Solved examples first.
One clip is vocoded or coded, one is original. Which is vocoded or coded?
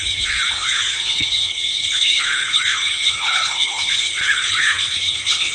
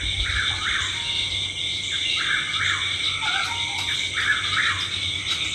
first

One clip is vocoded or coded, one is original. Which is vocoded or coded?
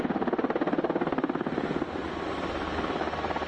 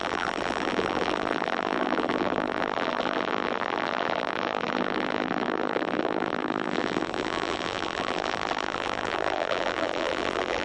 second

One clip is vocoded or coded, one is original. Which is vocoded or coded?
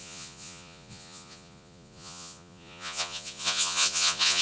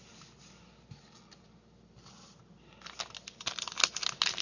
first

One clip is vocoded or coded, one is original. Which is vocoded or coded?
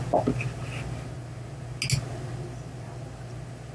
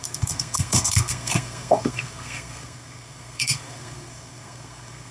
second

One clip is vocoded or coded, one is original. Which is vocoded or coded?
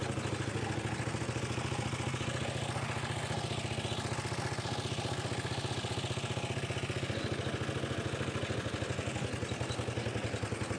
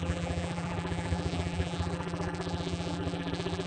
second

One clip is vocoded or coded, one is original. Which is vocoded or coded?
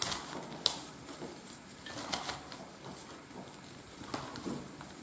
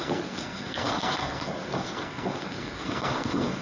second